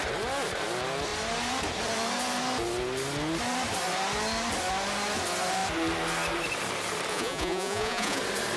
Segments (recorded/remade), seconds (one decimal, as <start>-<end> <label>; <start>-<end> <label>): 0.0-7.1 recorded; 7.1-8.2 remade; 8.2-8.6 recorded

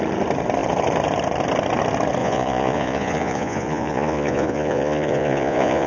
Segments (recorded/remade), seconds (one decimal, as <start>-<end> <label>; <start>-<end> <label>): 0.0-2.2 recorded; 2.2-5.9 remade

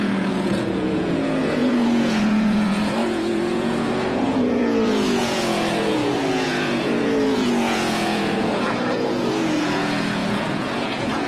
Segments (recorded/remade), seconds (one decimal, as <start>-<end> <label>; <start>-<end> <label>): 0.0-11.3 remade

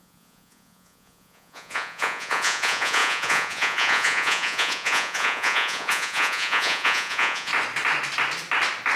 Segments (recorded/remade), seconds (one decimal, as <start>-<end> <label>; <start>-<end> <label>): 0.0-7.5 remade; 7.5-9.0 recorded

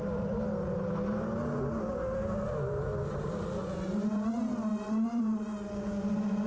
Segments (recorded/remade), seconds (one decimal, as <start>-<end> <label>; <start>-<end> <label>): 0.0-6.5 recorded